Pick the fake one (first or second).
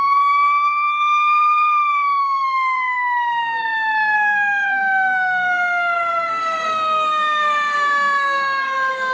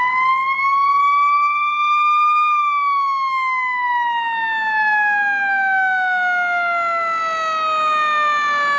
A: first